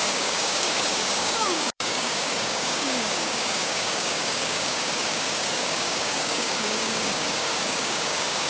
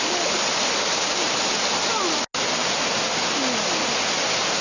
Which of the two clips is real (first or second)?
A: second